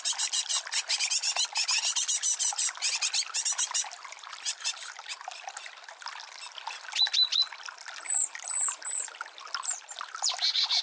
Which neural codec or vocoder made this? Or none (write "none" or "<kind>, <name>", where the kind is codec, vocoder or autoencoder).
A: none